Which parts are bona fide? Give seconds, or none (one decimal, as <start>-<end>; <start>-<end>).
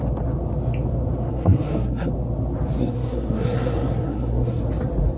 0.0-1.3; 2.1-2.8; 4.6-5.2